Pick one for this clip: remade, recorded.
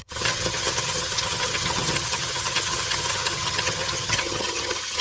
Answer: remade